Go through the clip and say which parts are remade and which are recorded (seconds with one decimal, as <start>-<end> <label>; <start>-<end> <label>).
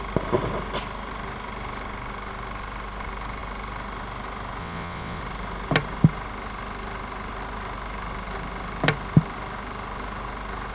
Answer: 0.0-4.6 recorded; 4.6-5.2 remade; 5.2-10.7 recorded